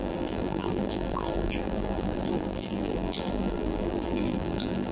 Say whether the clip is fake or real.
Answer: fake